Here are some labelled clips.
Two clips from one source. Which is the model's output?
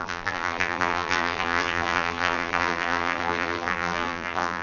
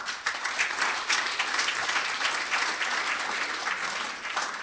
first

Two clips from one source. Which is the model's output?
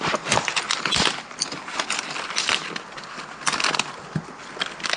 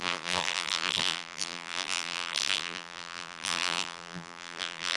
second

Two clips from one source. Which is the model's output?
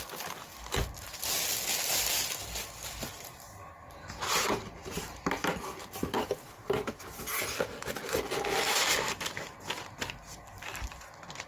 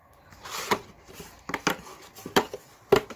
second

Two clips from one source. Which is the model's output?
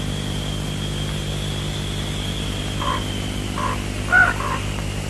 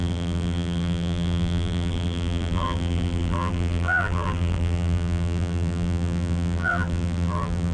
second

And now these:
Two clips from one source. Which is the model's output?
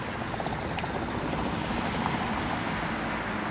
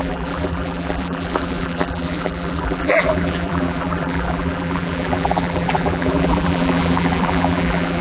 second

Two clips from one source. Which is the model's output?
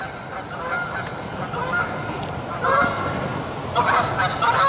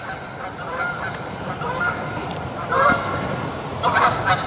second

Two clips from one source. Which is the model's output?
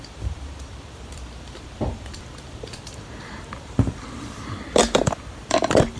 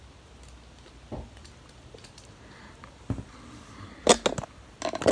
first